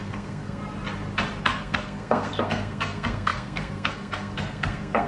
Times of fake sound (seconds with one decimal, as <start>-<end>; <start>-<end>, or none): 0.0-0.6; 1.4-5.1